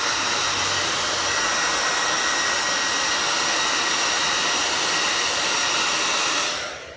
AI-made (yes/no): no